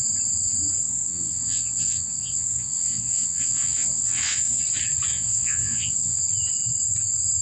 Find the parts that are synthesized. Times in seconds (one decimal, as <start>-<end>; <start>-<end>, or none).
0.8-4.6; 5.1-6.2

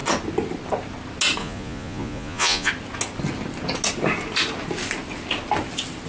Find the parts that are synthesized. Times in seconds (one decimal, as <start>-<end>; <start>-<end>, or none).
1.4-2.7

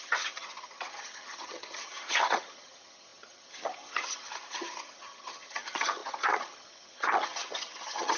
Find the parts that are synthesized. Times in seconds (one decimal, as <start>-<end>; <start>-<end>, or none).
0.0-8.2

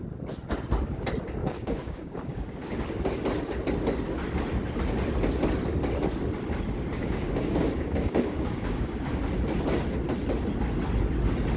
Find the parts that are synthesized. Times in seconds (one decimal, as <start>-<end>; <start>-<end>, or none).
1.4-2.8; 7.0-9.2

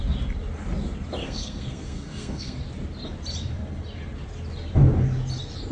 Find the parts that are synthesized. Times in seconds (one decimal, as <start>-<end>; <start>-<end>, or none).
1.2-2.6

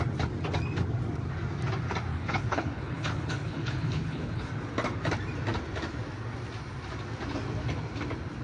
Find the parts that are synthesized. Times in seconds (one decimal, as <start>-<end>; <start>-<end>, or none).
2.1-4.5

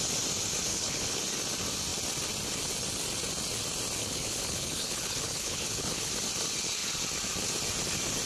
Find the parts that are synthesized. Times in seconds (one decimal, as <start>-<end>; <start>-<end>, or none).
0.7-1.2; 4.0-6.1

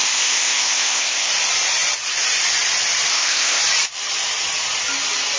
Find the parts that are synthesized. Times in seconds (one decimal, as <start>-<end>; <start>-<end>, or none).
0.0-1.3; 3.1-3.6